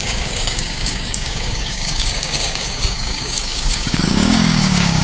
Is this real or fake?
fake